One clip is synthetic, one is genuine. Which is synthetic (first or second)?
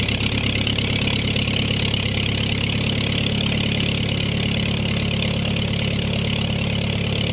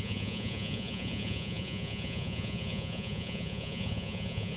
second